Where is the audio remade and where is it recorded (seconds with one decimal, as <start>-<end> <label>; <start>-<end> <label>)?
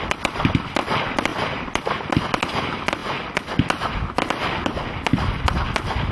0.0-6.1 recorded